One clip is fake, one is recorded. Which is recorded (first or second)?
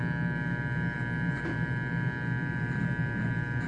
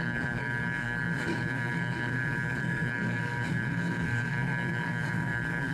first